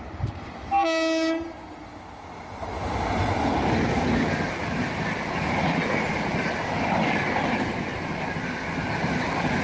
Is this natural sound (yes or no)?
yes